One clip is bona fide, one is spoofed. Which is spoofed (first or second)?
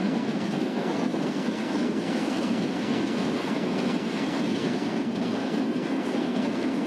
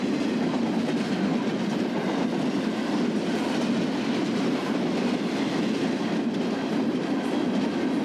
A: first